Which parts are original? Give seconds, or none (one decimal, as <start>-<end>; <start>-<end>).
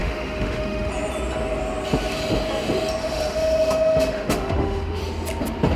0.9-3.0; 5.0-5.8